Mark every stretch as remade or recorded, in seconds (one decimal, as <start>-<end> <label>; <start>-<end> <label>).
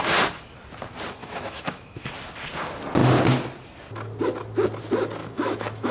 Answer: 0.0-1.2 recorded; 1.2-2.1 remade; 2.1-5.2 recorded; 5.2-5.9 remade